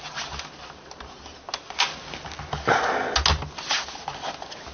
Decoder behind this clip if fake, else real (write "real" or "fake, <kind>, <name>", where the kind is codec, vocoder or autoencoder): real